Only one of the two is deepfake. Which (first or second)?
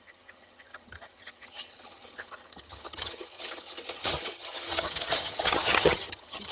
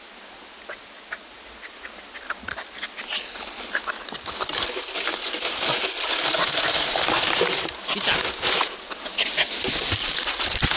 first